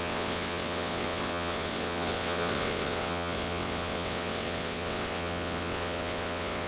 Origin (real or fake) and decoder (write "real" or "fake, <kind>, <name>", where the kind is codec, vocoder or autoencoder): fake, vocoder, WaveNeXt